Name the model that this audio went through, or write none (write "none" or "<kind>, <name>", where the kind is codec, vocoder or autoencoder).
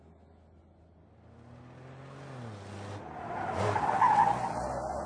none